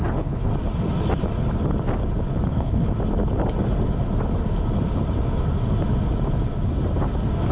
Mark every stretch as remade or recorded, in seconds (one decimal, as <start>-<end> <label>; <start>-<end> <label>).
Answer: 0.0-0.5 remade; 0.5-2.5 recorded; 2.5-2.9 remade; 2.9-7.5 recorded